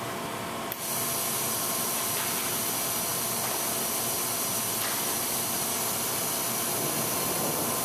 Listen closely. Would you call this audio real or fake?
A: real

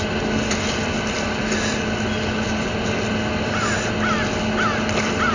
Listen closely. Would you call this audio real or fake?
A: real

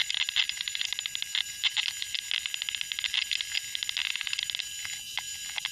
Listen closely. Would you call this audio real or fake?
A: fake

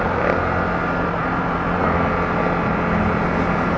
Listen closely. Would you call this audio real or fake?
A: real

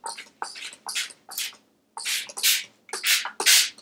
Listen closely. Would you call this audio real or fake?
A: real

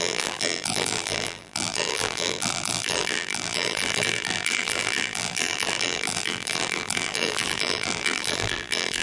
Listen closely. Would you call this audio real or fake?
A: fake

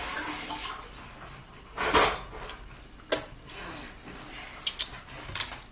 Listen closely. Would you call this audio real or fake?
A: real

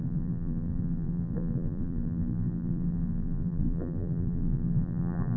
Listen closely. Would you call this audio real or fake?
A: fake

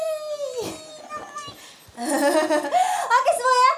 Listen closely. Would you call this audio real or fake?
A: real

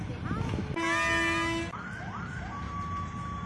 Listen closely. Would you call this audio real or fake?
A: real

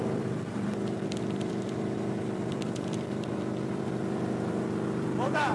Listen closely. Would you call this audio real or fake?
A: fake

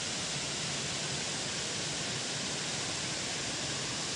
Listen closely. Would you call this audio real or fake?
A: real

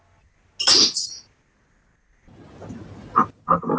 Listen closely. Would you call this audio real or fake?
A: real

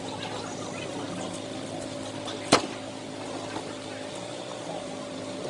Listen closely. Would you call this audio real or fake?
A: real